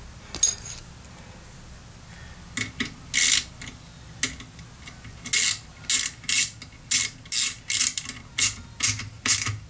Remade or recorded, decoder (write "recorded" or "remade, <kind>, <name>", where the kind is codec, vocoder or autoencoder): recorded